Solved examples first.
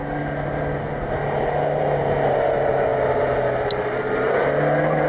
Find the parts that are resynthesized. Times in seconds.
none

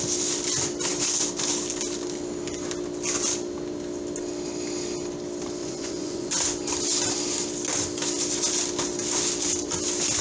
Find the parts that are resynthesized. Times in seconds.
5.6-6.3 (vocoder, Vocos)

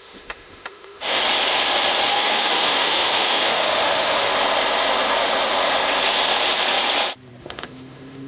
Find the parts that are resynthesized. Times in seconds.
0.0-1.2 (autoencoder, DAC-VAE); 2.1-4.3; 7.4-8.3

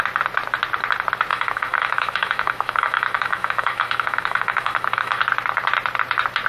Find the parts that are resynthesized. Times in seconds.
1.3-5.2 (autoencoder, DAC-VAE)

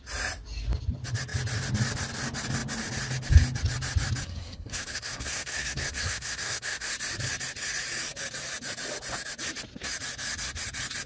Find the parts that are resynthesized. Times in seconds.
4.2-6.9 (codec, SNAC)

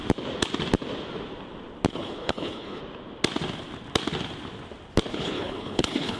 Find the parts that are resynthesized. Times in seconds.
1.9-2.8 (codec, HILCodec); 5.1-6.2